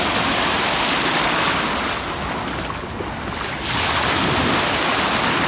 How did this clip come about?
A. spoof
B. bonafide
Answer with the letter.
B